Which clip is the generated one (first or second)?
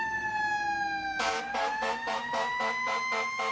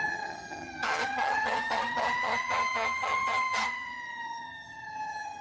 second